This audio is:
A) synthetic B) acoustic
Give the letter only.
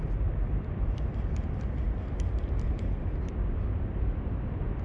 B